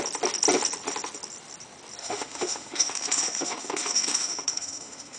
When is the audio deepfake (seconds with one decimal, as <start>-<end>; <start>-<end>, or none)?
2.0-5.2